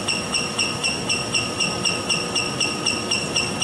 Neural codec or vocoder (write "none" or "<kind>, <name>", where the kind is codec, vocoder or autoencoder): none